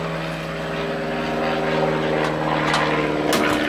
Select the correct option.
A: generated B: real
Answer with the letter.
B